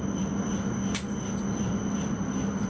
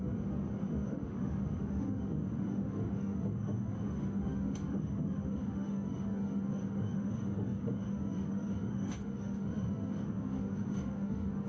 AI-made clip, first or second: second